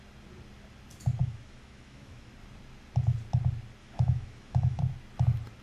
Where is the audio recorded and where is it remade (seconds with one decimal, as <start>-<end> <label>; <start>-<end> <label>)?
0.0-1.2 recorded; 1.2-2.3 remade; 2.3-3.8 recorded; 3.8-4.8 remade; 4.8-5.6 recorded